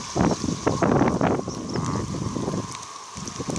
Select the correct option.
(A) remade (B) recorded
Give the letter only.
B